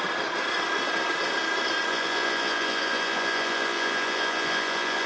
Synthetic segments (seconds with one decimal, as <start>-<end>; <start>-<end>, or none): 1.9-5.1